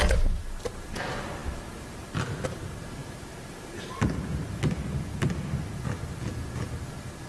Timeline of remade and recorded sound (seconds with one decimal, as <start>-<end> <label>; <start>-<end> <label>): 0.0-7.3 recorded